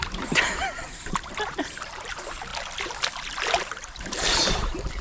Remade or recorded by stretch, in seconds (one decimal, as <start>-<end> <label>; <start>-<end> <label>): 0.0-2.5 remade; 2.5-3.6 recorded; 3.6-5.0 remade